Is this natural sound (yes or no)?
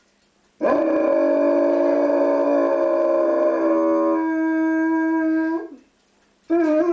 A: yes